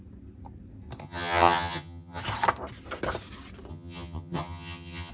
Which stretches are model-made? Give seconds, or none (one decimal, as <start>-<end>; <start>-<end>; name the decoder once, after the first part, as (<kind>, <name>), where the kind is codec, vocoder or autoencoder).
1.0-2.2 (vocoder, HiFi-GAN); 3.7-5.1